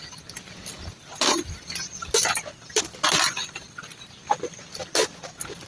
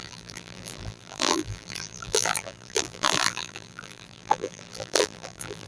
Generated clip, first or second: second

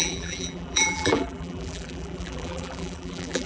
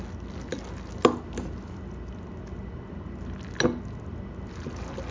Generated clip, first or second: first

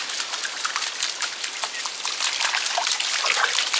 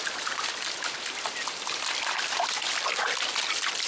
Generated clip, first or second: second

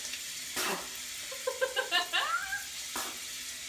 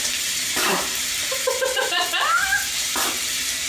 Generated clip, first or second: second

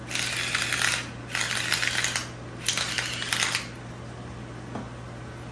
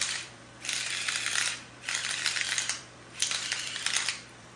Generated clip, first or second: second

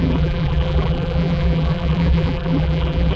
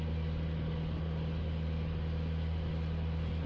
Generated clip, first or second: first